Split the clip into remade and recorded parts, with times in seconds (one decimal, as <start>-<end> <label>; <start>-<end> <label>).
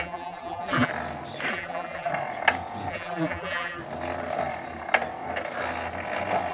0.0-0.9 remade; 0.9-1.5 recorded; 1.5-2.1 remade; 2.1-2.9 recorded; 2.9-3.8 remade; 3.8-6.5 recorded